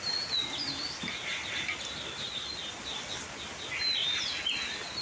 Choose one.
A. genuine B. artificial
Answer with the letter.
A